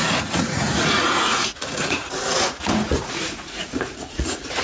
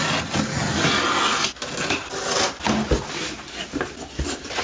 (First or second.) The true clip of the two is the second